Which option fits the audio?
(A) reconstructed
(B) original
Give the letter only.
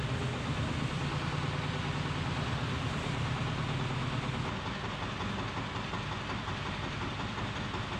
B